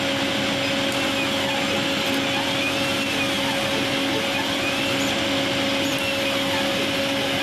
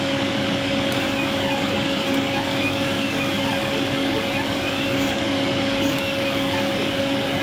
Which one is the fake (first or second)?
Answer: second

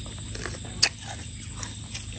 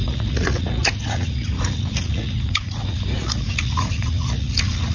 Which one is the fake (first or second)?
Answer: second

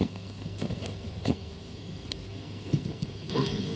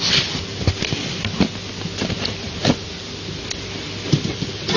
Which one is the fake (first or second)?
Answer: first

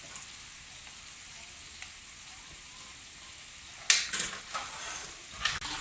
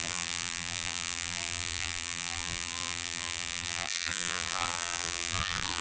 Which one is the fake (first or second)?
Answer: second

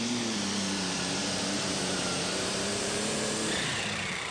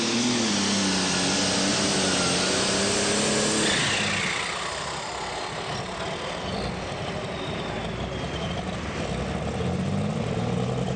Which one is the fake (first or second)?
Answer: first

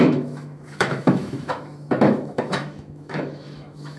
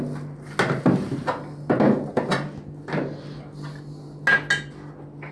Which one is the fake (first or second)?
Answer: first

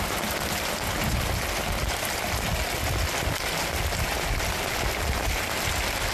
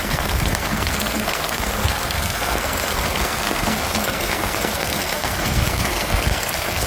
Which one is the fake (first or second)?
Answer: second